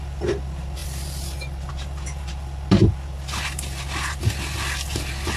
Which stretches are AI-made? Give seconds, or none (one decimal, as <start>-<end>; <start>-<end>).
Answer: 0.0-2.8; 4.2-5.4